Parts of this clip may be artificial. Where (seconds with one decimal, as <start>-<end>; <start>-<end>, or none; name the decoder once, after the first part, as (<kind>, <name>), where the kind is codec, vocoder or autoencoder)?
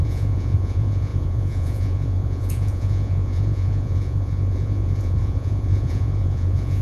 0.0-6.8 (vocoder, Vocos)